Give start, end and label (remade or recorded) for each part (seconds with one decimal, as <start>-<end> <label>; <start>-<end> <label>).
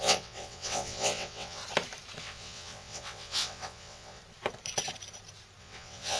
0.0-1.6 remade; 1.6-2.2 recorded; 2.2-4.2 remade; 4.2-5.6 recorded; 5.6-6.2 remade